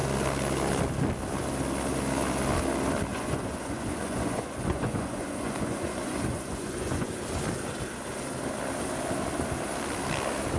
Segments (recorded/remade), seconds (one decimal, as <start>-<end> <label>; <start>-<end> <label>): 0.0-3.1 recorded; 3.1-7.2 remade; 7.2-10.6 recorded